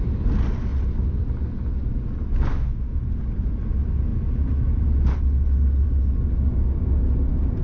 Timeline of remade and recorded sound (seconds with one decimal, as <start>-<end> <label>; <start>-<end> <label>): 0.0-2.5 recorded; 2.5-3.0 remade; 3.0-7.6 recorded